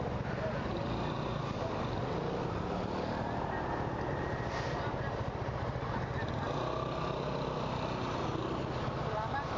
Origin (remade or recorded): recorded